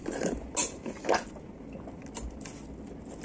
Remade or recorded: recorded